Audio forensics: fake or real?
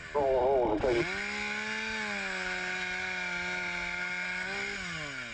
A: real